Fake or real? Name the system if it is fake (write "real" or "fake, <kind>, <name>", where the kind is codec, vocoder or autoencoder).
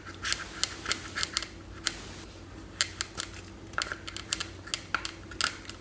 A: real